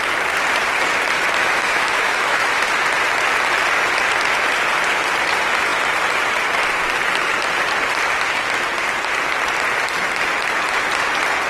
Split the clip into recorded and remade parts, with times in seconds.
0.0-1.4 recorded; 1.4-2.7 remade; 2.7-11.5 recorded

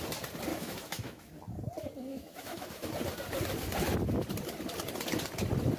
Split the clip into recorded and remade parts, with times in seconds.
0.0-0.5 recorded; 0.5-1.3 remade; 1.3-2.1 recorded; 2.1-2.9 remade; 2.9-5.8 recorded

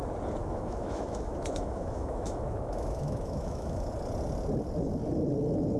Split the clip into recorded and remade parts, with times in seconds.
0.0-0.4 recorded; 0.4-3.9 remade; 3.9-5.8 recorded

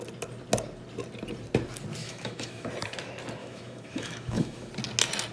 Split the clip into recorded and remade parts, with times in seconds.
0.0-2.0 recorded; 2.0-2.7 remade; 2.7-3.4 recorded; 3.4-4.7 remade; 4.7-5.3 recorded

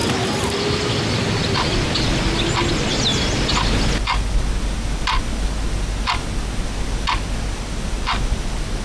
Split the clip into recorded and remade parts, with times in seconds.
0.0-8.8 recorded